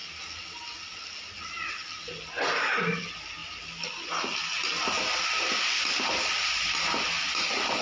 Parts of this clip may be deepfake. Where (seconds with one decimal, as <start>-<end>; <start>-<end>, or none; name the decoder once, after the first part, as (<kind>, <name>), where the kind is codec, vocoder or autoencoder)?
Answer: none